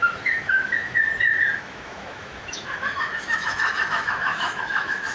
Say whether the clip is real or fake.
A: fake